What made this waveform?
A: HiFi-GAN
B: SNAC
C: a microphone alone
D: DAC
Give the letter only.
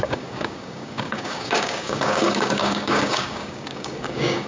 D